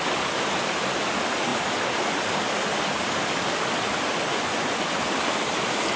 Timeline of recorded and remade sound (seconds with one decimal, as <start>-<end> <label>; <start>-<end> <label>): 0.0-4.3 recorded; 4.3-5.0 remade; 5.0-6.0 recorded